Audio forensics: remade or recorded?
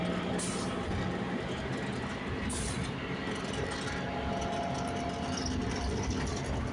recorded